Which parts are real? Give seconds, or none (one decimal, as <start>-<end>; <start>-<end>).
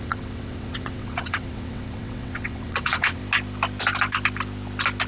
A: 3.2-5.1